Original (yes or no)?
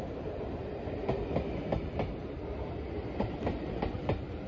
yes